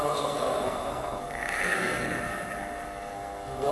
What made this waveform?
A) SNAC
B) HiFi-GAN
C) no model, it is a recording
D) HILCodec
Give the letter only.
A